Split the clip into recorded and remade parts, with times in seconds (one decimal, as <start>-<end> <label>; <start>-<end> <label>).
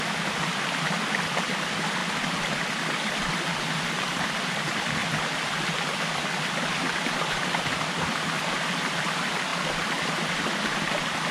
0.0-2.0 remade; 2.0-4.4 recorded; 4.4-5.0 remade; 5.0-6.6 recorded; 6.6-9.5 remade; 9.5-10.1 recorded; 10.1-11.3 remade